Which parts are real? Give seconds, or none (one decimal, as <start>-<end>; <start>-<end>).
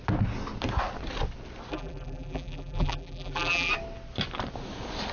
0.0-1.7; 3.7-5.1